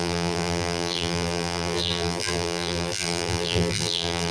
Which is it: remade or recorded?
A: remade